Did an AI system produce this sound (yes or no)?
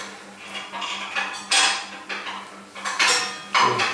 no